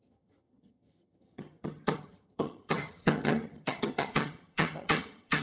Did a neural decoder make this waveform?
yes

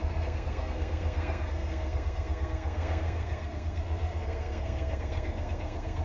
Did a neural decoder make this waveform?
yes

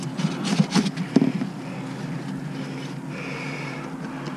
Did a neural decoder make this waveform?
no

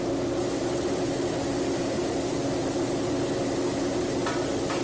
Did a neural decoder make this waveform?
no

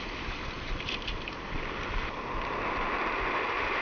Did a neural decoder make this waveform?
no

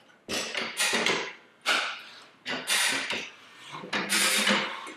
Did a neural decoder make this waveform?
no